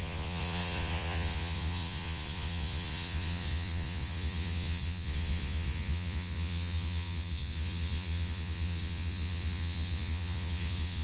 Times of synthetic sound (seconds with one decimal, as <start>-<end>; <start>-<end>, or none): 0.0-11.0

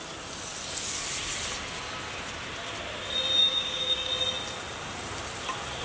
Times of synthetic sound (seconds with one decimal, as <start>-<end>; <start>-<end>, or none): 3.4-4.1

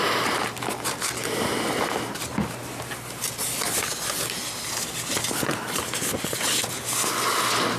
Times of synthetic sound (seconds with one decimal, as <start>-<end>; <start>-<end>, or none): 4.4-5.8

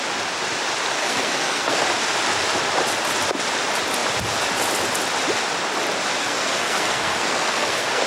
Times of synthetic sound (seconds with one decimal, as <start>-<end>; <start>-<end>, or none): 1.0-1.8; 6.2-8.1

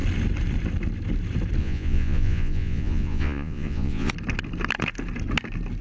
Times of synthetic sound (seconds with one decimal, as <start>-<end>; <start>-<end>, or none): 1.6-4.1